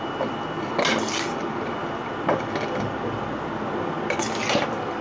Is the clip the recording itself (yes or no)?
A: yes